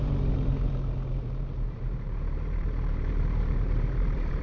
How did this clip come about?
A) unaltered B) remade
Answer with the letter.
B